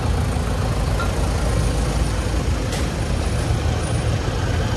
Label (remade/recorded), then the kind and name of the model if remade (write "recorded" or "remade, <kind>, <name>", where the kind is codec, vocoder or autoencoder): recorded